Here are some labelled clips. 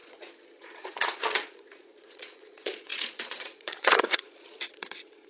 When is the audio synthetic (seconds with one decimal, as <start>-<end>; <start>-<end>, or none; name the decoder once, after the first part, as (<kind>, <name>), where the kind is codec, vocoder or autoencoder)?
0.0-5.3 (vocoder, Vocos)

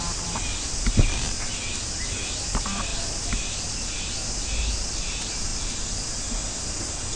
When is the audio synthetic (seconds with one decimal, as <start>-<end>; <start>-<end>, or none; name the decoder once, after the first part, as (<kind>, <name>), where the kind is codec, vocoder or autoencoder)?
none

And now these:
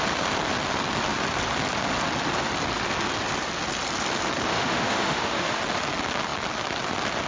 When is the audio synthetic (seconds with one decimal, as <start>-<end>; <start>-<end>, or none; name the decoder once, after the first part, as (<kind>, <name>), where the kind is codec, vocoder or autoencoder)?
4.5-5.6 (autoencoder, DAC-VAE)

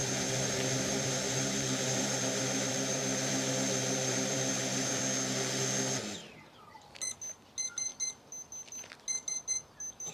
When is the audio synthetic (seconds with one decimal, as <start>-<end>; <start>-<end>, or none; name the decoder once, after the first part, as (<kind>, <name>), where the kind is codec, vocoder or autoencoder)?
0.0-5.0 (vocoder, BigVGAN v2)